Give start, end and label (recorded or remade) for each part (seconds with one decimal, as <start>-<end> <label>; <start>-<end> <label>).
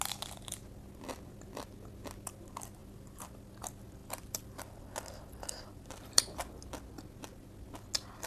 0.0-2.8 recorded; 2.8-3.5 remade; 3.5-4.0 recorded; 4.0-6.5 remade; 6.5-8.3 recorded